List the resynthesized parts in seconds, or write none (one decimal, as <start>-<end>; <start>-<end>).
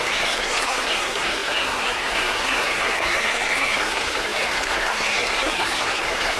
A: 0.0-6.4